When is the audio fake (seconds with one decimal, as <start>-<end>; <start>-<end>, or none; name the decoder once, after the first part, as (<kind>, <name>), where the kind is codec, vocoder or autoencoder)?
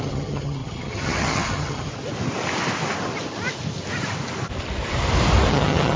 0.0-1.9 (vocoder, HiFi-GAN); 5.5-6.0